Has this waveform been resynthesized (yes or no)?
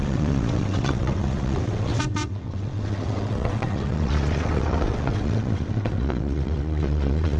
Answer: yes